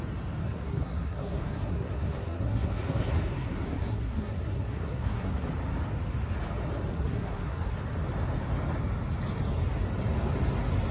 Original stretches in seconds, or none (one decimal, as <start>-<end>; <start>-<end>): 0.0-0.4; 5.5-6.9; 7.7-10.9